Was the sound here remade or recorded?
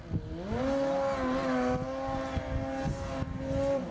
recorded